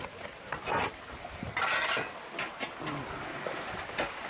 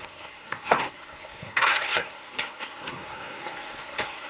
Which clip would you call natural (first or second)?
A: first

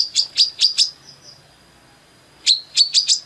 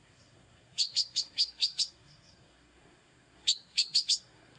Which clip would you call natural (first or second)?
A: first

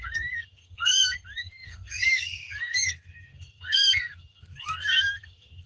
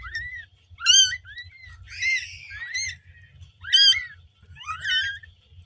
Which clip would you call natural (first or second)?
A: second